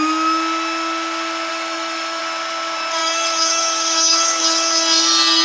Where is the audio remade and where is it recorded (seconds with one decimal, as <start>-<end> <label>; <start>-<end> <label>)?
0.0-1.5 recorded; 1.5-2.2 remade; 2.2-3.0 recorded; 3.0-4.4 remade; 4.4-5.4 recorded